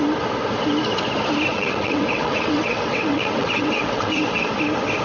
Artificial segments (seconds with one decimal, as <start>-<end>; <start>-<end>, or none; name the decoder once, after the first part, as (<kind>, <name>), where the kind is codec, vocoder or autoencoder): 1.5-4.5 (vocoder, WaveNeXt)